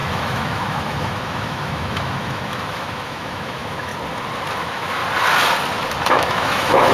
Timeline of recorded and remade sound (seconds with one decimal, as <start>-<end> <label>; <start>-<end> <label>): 0.0-3.9 remade; 3.9-4.6 recorded; 4.6-5.0 remade; 5.0-6.1 recorded; 6.1-6.9 remade